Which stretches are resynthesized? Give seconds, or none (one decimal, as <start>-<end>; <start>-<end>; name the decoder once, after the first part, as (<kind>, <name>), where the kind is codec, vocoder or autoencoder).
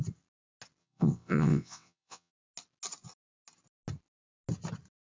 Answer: 0.8-2.3 (vocoder, WaveNeXt)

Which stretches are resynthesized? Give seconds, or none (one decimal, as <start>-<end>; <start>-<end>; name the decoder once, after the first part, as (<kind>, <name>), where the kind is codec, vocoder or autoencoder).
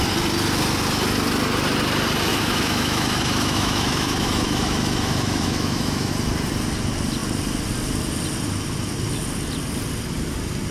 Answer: 2.3-6.1 (autoencoder, DAC-VAE)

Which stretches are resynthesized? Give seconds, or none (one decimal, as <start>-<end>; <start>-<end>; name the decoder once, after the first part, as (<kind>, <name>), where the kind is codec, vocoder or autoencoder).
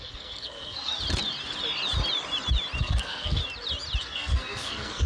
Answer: 0.0-0.9 (codec, SNAC); 2.8-3.4; 4.0-5.1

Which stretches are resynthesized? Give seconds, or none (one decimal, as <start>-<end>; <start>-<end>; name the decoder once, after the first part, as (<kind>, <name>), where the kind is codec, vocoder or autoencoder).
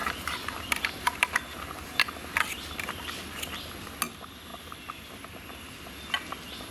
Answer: 0.0-4.0 (vocoder, BigVGAN v2)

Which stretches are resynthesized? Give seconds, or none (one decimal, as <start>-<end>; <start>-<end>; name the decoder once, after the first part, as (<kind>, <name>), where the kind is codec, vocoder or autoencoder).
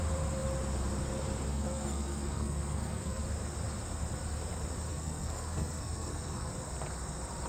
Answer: 1.5-3.2 (codec, SNAC); 4.9-6.5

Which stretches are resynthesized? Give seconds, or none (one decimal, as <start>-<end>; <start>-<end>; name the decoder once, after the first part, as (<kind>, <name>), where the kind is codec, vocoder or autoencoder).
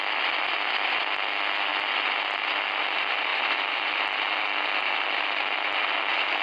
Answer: none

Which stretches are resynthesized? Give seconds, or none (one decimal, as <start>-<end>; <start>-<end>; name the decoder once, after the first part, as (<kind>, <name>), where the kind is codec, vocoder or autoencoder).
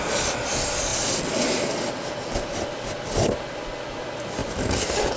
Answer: none